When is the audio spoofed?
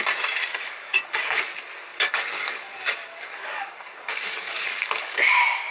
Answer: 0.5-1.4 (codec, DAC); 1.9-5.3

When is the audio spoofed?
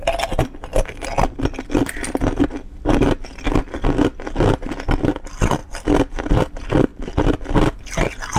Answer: 5.6-6.3 (vocoder, BigVGAN v2)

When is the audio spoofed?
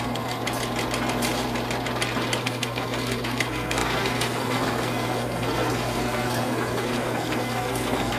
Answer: 0.0-0.4 (codec, SNAC); 2.4-8.2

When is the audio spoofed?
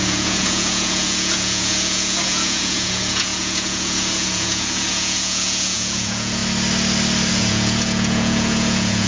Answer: 0.0-6.4 (vocoder, Vocos); 7.3-9.1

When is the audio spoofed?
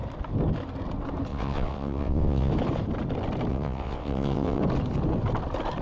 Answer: 1.3-2.5 (vocoder, WaveNeXt); 3.5-4.6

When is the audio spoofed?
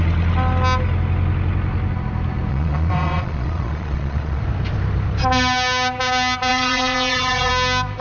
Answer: 2.5-4.4 (vocoder, Vocos); 6.5-7.5